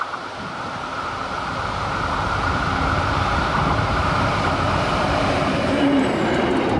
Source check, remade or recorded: remade